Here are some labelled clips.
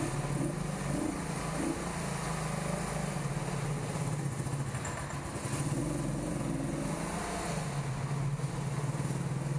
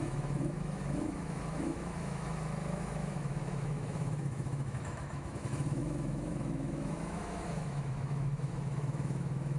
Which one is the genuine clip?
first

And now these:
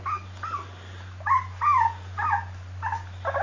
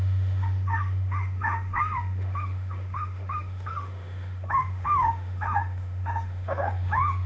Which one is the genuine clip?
first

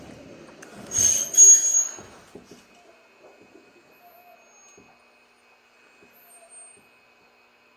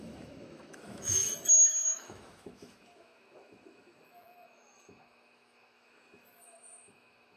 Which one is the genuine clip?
first